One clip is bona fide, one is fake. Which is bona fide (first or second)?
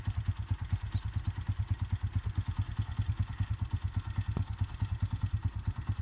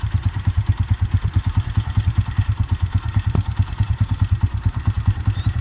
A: first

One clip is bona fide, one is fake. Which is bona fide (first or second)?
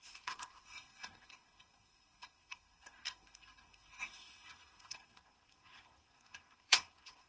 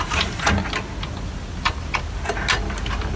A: second